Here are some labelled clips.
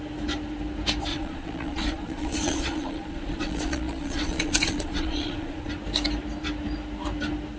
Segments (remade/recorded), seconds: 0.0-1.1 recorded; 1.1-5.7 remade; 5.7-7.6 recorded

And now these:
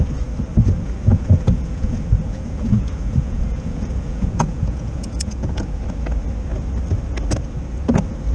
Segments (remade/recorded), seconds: 0.0-1.1 recorded; 1.1-5.8 remade; 5.8-8.3 recorded

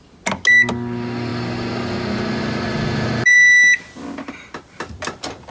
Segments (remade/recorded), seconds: 0.0-5.5 recorded

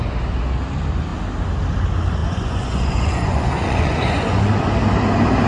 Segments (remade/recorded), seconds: 0.0-2.2 recorded; 2.2-4.7 remade; 4.7-5.5 recorded

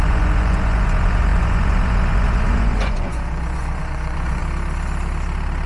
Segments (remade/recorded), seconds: 0.0-4.4 remade; 4.4-5.7 recorded